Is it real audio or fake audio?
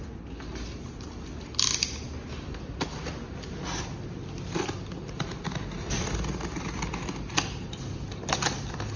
real